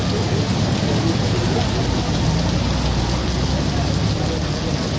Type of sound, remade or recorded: recorded